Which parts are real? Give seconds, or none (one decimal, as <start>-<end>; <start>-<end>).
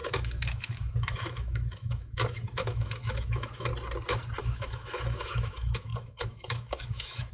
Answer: 3.7-4.4